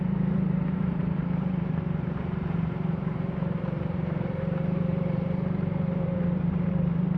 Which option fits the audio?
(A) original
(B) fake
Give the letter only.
B